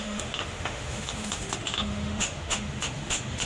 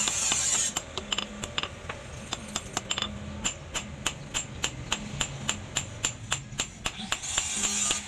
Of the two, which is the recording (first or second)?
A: second